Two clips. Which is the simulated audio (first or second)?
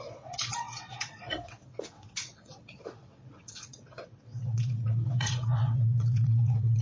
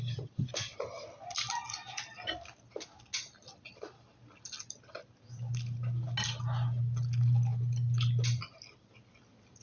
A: first